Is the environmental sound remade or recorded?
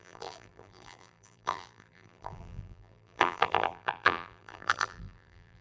remade